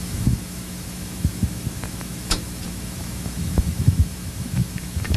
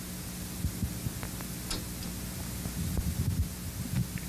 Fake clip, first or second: first